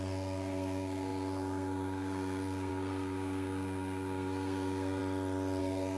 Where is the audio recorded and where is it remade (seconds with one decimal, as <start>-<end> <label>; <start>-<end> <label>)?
0.0-5.0 remade; 5.0-5.6 recorded; 5.6-6.0 remade